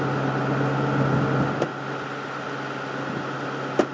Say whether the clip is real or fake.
real